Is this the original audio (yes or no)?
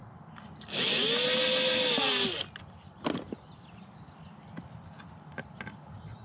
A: yes